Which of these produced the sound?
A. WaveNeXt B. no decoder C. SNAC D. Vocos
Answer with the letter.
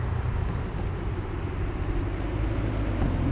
B